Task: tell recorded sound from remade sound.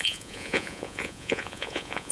remade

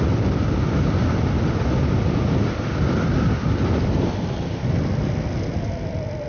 recorded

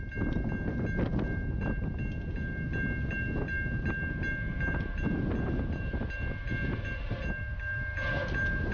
recorded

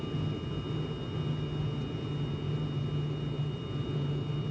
recorded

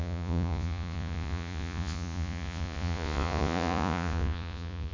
remade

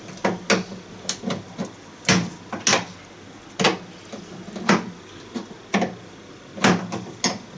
recorded